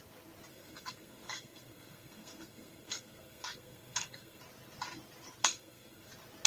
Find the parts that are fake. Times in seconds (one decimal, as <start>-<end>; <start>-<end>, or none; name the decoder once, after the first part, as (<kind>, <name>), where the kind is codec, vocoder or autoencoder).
0.5-4.4 (codec, SNAC); 5.4-6.1